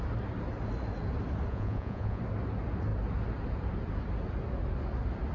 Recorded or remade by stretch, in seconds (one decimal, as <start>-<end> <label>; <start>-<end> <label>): 0.0-1.5 recorded; 1.5-2.2 remade; 2.2-5.3 recorded